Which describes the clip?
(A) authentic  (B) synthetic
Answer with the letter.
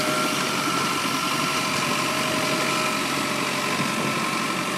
A